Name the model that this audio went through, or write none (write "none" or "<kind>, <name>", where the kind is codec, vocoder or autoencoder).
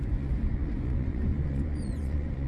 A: vocoder, Vocos